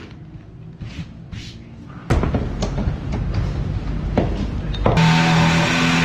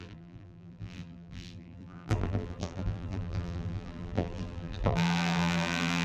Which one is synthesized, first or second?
second